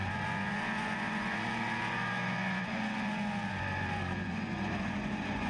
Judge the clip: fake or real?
fake